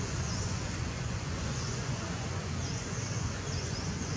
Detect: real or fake fake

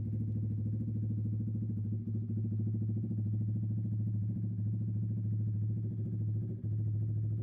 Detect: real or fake real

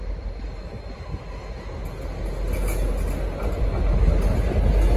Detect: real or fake real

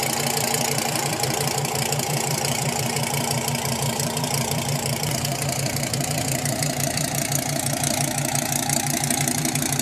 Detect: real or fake fake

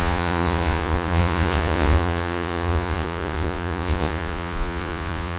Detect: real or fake fake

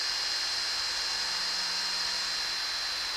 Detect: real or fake real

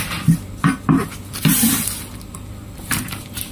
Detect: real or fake fake